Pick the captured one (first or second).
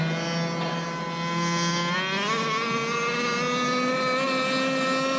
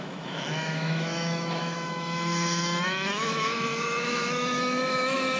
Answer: first